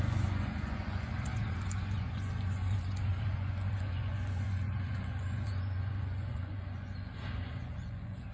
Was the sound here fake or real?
fake